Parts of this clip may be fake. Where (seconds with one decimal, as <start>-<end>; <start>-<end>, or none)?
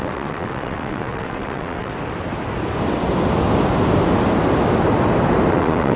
0.0-1.9; 5.5-6.0